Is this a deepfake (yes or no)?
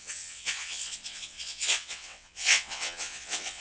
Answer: yes